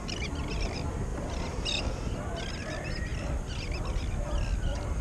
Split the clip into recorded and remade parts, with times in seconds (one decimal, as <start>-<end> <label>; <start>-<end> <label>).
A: 0.0-1.1 recorded; 1.1-1.8 remade; 1.8-5.0 recorded